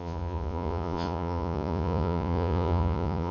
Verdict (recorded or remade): remade